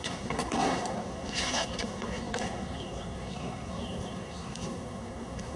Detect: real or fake fake